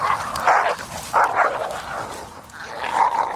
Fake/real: fake